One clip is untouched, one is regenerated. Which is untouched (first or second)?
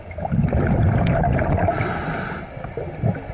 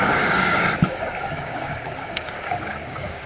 first